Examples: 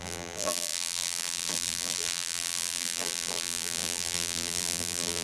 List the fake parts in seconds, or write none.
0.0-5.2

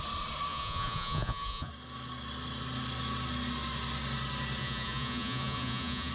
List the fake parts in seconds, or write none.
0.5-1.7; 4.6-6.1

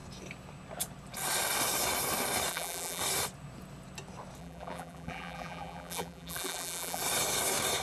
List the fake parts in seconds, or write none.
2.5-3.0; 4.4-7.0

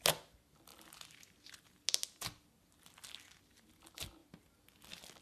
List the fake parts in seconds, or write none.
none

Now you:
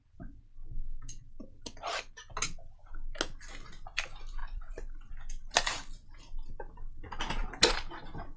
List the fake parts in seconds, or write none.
4.4-5.1; 7.4-8.4